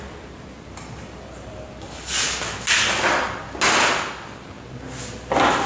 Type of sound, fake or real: real